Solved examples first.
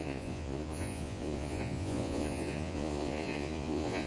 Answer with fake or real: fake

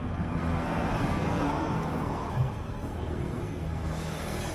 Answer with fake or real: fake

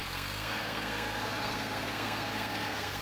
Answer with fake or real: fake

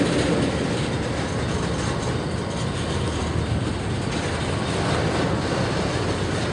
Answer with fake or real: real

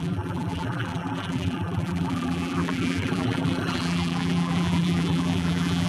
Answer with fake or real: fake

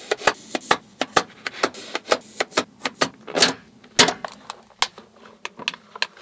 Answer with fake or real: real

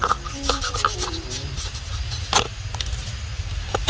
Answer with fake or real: real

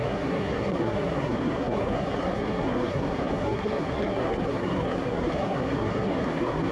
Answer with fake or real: fake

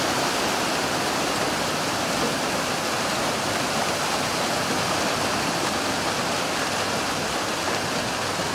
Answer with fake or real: real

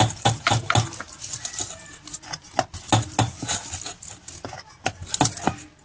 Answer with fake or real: real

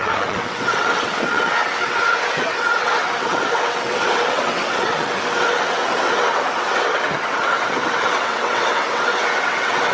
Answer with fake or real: fake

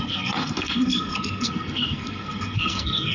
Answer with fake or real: fake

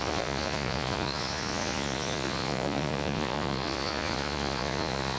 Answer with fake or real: fake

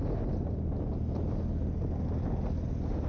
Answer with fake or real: real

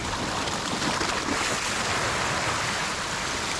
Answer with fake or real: real